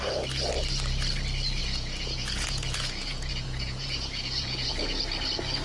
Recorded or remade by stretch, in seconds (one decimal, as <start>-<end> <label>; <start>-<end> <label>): 0.0-1.6 recorded; 1.6-4.7 remade; 4.7-5.6 recorded